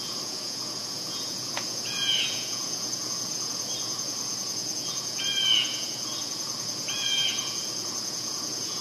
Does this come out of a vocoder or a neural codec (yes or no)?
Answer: yes